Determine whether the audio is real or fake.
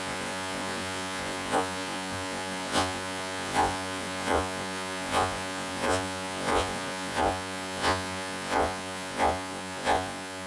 fake